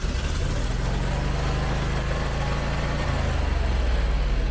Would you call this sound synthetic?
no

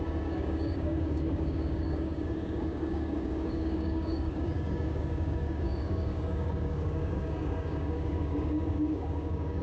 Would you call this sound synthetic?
yes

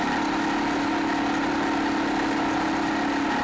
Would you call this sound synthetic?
no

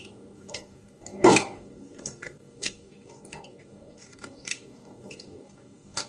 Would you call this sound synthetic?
yes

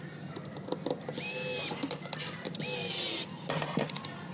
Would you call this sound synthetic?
no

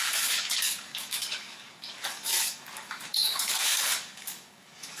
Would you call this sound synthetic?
yes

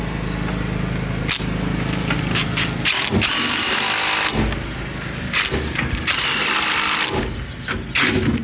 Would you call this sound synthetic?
no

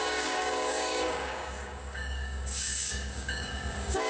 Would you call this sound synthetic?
yes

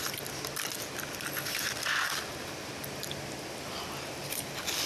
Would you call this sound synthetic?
no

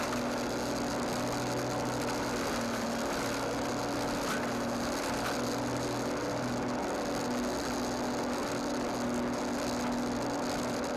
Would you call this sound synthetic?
no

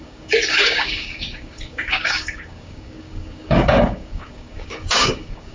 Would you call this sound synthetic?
yes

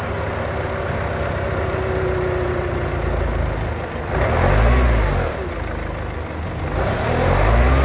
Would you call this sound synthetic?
no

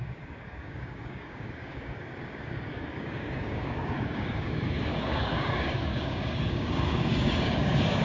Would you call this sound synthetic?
yes